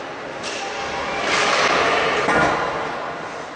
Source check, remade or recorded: recorded